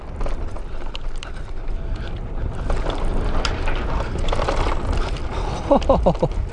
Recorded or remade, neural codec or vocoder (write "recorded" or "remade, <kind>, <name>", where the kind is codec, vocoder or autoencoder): recorded